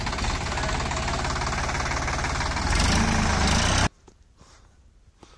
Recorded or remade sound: recorded